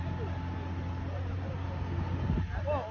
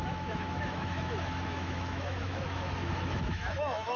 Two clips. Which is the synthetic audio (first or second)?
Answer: second